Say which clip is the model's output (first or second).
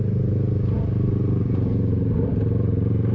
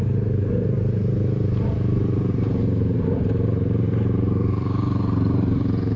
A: second